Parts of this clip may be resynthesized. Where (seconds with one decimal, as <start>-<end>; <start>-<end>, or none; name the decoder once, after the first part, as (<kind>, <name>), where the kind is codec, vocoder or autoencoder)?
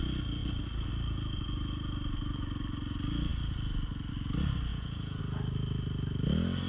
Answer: 4.7-5.2 (vocoder, Vocos)